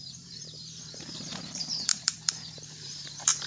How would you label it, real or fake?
fake